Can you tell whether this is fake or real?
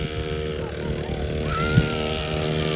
real